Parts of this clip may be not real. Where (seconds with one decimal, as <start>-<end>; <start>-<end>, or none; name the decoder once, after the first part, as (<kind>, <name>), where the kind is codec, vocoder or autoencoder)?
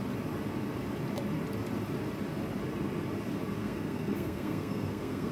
3.6-5.3 (codec, SNAC)